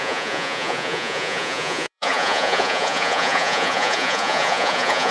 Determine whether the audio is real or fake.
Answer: fake